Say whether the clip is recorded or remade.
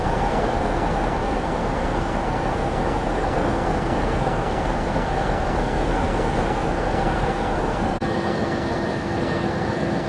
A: remade